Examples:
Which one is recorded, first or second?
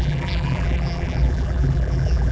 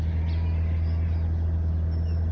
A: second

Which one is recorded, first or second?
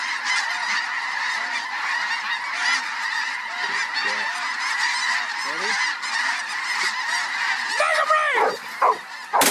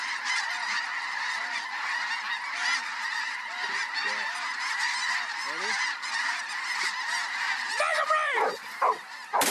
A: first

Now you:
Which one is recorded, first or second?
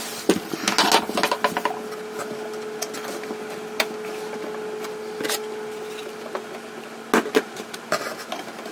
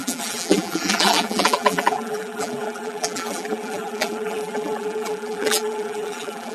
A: first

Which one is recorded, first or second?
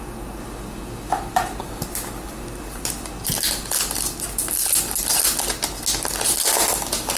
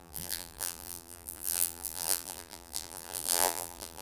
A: first